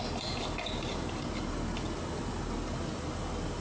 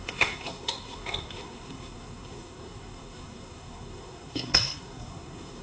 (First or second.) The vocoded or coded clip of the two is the second